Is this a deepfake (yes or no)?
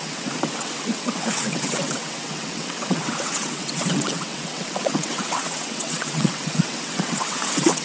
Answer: yes